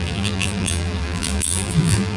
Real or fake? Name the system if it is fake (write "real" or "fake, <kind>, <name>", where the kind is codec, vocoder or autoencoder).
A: fake, vocoder, BigVGAN v2